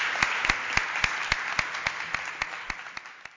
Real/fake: real